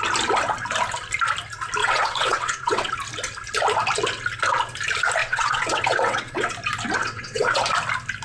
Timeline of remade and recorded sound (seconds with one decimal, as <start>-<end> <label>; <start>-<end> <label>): 0.0-1.8 recorded; 1.8-2.9 remade; 2.9-5.2 recorded; 5.2-6.5 remade; 6.5-7.0 recorded; 7.0-7.6 remade; 7.6-8.2 recorded

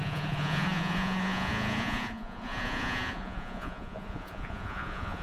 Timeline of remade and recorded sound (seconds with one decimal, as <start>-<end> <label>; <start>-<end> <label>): 0.0-5.2 remade

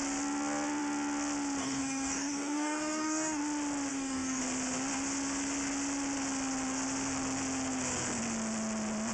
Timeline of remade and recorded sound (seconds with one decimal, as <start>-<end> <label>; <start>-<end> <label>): 0.0-1.6 recorded; 1.6-3.4 remade; 3.4-3.9 recorded; 3.9-4.4 remade; 4.4-9.1 recorded

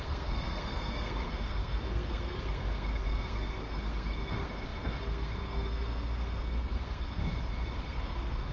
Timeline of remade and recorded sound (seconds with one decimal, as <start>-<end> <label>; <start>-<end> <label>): 0.0-7.2 remade; 7.2-7.8 recorded; 7.8-8.5 remade

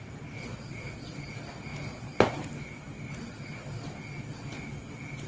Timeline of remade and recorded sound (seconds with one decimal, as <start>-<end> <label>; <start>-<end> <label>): 0.0-5.3 recorded

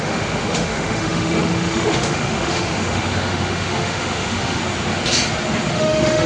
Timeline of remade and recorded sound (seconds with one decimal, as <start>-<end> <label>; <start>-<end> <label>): 0.0-4.6 remade; 4.6-5.7 recorded; 5.7-6.3 remade